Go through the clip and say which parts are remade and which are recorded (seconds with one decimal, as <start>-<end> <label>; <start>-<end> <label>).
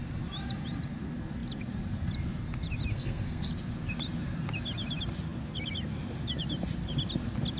0.0-2.9 recorded; 2.9-3.5 remade; 3.5-7.6 recorded